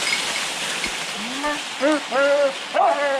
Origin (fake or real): real